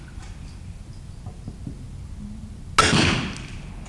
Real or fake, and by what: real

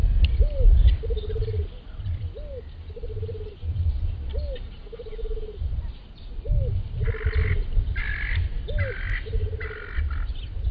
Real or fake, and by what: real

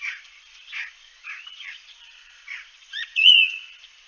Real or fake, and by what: fake, vocoder, Vocos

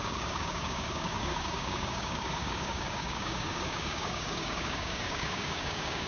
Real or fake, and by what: fake, codec, DAC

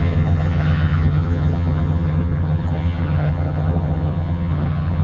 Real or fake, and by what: fake, vocoder, HiFi-GAN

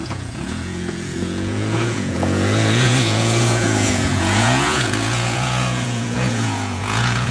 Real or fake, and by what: fake, vocoder, Vocos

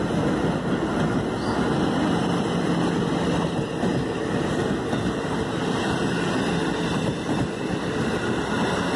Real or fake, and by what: real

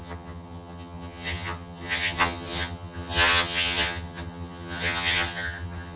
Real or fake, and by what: fake, vocoder, HiFi-GAN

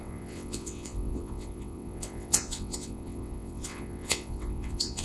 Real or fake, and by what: fake, vocoder, WaveNeXt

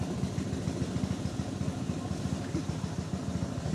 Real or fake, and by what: real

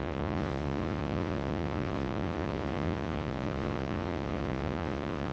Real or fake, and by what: fake, vocoder, Vocos